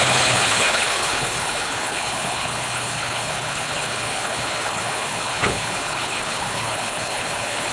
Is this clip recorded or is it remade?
remade